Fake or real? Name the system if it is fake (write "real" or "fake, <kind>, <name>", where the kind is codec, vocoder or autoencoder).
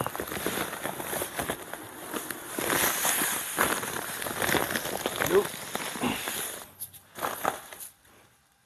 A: real